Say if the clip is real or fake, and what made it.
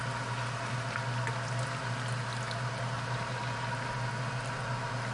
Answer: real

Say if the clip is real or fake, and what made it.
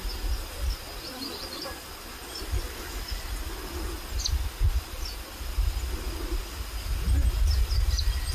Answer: real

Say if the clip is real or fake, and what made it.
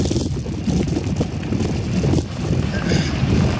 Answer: real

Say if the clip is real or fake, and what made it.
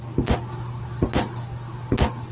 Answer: real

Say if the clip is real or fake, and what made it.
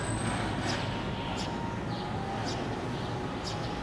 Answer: real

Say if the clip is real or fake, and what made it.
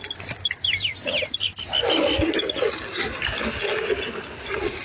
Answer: real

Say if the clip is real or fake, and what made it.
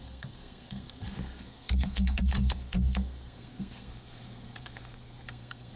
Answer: fake, codec, SNAC